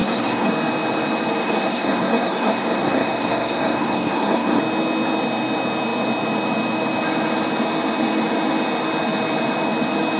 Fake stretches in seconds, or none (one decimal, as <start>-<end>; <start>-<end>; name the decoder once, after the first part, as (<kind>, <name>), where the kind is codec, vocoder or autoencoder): 0.0-0.5 (codec, SNAC); 1.4-4.6